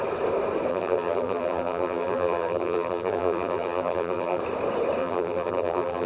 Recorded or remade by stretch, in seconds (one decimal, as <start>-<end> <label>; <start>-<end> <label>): 0.0-0.7 recorded; 0.7-4.4 remade; 4.4-5.0 recorded; 5.0-6.1 remade